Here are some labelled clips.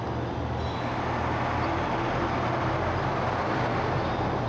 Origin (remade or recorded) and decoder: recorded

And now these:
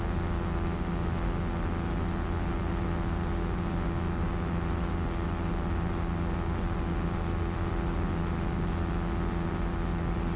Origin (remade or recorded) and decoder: recorded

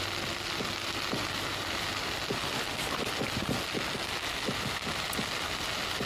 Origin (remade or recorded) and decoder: recorded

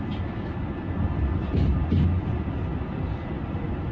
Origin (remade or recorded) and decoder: recorded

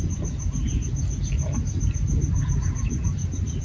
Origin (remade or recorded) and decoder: recorded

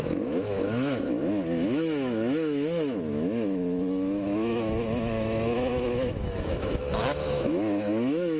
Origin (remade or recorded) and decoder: remade, autoencoder, DAC-VAE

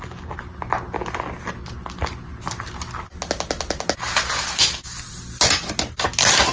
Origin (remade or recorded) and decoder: recorded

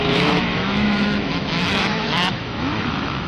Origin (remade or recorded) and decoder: remade, autoencoder, DAC-VAE